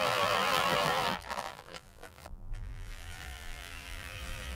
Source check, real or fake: fake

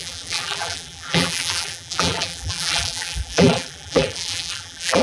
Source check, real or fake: fake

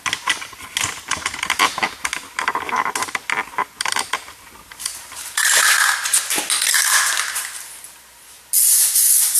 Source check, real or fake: real